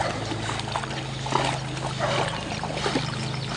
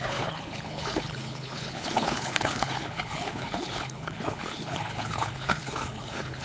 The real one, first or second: first